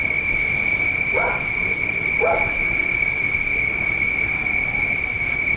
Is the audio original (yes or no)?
yes